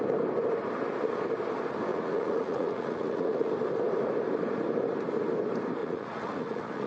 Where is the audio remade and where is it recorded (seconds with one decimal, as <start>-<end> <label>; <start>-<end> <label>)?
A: 0.0-1.9 recorded; 1.9-3.5 remade; 3.5-5.8 recorded; 5.8-6.9 remade

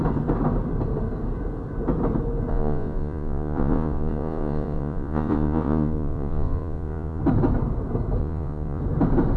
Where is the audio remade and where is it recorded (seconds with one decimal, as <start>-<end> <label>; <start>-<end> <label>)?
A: 0.0-2.5 recorded; 2.5-7.2 remade; 7.2-8.2 recorded; 8.2-8.8 remade; 8.8-9.4 recorded

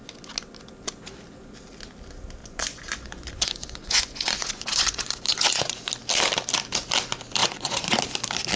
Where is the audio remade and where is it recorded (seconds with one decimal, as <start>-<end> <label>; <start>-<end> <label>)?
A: 0.0-2.4 recorded; 2.4-5.8 remade; 5.8-7.4 recorded; 7.4-8.0 remade; 8.0-8.6 recorded

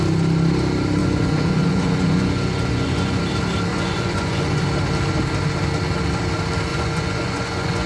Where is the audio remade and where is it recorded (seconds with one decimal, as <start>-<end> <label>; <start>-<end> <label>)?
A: 0.0-1.0 recorded; 1.0-3.2 remade; 3.2-3.7 recorded; 3.7-4.6 remade; 4.6-6.7 recorded; 6.7-7.9 remade

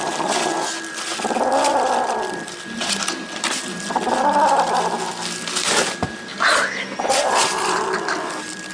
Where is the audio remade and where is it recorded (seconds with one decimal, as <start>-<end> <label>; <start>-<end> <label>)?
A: 0.0-8.7 recorded